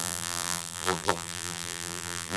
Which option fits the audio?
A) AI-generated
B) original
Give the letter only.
A